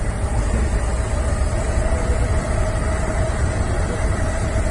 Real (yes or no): yes